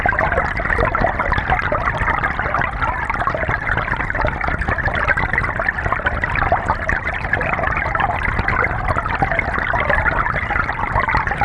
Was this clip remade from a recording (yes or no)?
no